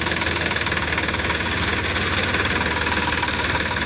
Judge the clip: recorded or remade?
recorded